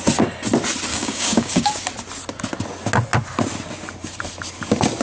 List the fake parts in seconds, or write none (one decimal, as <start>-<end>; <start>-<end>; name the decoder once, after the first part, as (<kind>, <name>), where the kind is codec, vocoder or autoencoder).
0.9-1.7 (codec, DAC)